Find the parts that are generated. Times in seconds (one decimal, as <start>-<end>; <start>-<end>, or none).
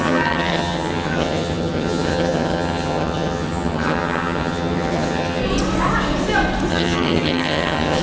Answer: 0.0-5.4; 6.7-8.0